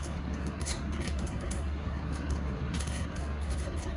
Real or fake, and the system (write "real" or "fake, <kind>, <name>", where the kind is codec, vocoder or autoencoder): fake, codec, SNAC